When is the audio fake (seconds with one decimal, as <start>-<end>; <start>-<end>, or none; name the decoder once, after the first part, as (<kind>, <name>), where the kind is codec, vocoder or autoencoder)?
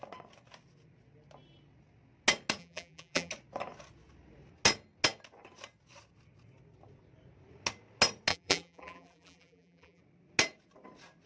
2.6-3.3 (vocoder, BigVGAN v2); 8.3-10.0